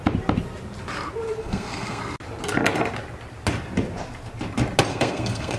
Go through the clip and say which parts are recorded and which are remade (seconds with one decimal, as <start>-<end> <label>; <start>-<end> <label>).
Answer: 0.0-1.4 recorded; 1.4-2.0 remade; 2.0-4.9 recorded; 4.9-5.6 remade

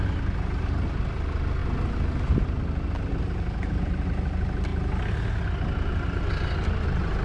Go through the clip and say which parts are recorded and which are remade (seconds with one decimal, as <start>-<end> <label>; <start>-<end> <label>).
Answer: 0.0-7.2 recorded

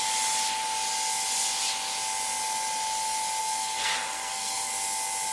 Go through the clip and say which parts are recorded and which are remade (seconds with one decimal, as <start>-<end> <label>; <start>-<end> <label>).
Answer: 0.0-3.4 recorded; 3.4-4.7 remade; 4.7-5.3 recorded

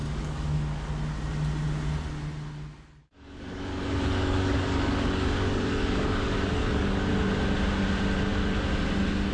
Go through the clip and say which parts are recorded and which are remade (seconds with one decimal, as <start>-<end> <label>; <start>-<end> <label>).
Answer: 0.0-0.9 remade; 0.9-3.0 recorded; 3.0-7.1 remade; 7.1-9.3 recorded

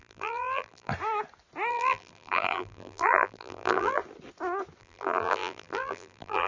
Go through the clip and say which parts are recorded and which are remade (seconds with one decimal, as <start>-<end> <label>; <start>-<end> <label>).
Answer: 0.0-0.9 remade; 0.9-1.7 recorded; 1.7-4.0 remade; 4.0-4.8 recorded; 4.8-6.5 remade

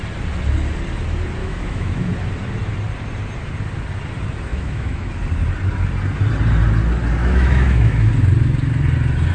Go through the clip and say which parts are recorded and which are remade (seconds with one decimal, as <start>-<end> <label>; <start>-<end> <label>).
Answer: 0.0-1.4 recorded; 1.4-2.1 remade; 2.1-4.5 recorded; 4.5-5.1 remade; 5.1-7.2 recorded; 7.2-8.1 remade; 8.1-9.3 recorded